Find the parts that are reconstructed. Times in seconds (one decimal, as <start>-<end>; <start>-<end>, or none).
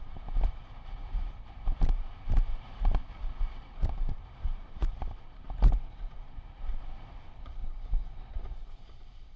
0.0-7.6; 8.3-9.4